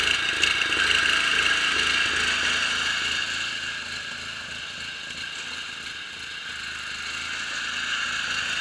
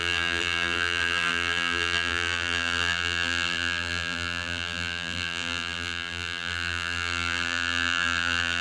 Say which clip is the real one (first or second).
first